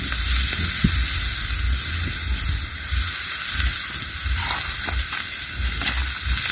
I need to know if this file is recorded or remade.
recorded